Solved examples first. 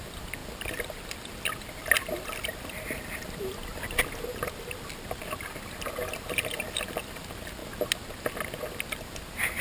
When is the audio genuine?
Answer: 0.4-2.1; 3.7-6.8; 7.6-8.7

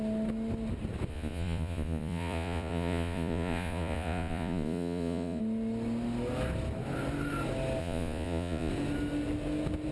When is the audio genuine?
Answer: 0.0-1.1; 5.4-7.8; 8.7-9.9

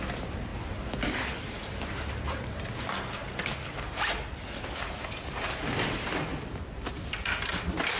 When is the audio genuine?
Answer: 0.0-0.5; 1.8-6.3

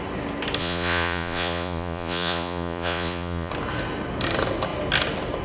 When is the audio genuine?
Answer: 0.0-0.6; 3.5-5.4

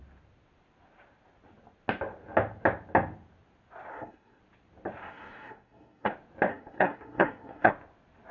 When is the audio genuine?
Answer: 0.0-3.9; 4.4-5.0; 6.1-6.5; 7.7-8.3

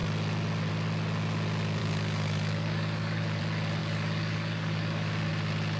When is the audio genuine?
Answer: 0.0-1.8; 3.4-3.8; 5.3-5.8